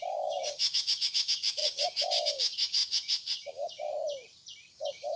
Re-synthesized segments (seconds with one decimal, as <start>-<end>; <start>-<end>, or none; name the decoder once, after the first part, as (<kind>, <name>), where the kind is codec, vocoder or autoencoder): 0.0-3.9 (codec, DAC); 4.7-5.2